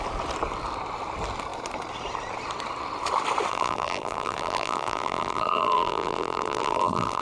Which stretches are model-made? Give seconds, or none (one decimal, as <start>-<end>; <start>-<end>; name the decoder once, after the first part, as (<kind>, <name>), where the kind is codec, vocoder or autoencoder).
3.5-7.2 (vocoder, BigVGAN v2)